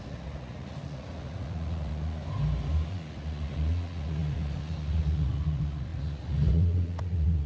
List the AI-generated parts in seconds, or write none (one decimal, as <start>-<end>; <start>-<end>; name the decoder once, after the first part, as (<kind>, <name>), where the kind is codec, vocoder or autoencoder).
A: 0.0-2.2 (vocoder, Vocos); 2.9-7.5